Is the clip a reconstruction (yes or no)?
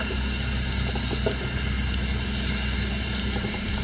no